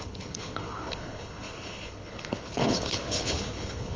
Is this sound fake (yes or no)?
yes